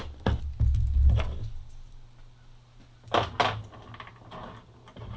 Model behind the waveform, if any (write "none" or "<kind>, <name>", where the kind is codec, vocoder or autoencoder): none